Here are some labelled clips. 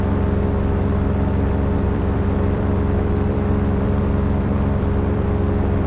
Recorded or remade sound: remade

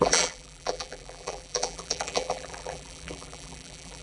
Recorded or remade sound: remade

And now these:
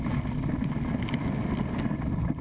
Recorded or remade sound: recorded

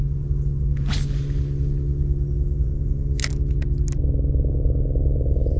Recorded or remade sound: recorded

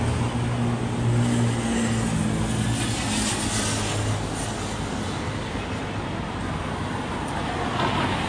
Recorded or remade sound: recorded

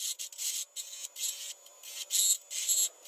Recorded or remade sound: recorded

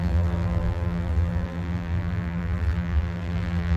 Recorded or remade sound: remade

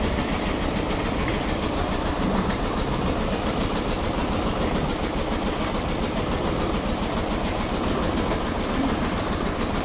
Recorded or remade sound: remade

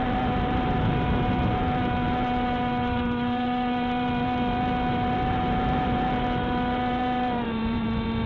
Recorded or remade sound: remade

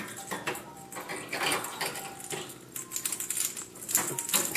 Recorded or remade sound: recorded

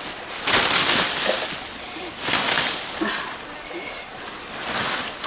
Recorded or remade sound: recorded